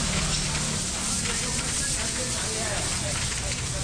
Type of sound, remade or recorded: recorded